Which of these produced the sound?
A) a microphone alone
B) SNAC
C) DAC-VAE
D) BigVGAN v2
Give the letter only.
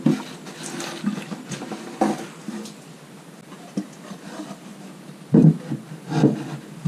A